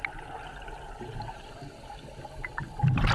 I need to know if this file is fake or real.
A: real